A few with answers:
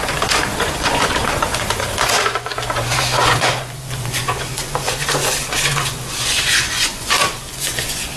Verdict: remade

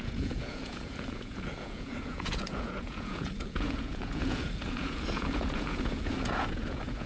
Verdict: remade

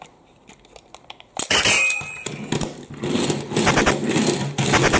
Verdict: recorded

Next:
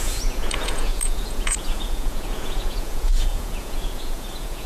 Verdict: remade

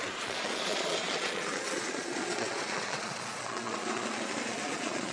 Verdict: remade